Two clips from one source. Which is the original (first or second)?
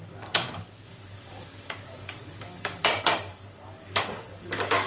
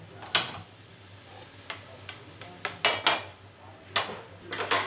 second